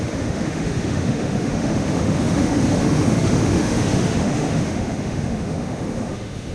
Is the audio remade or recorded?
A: remade